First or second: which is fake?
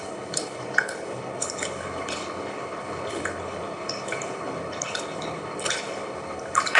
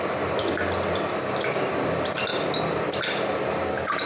first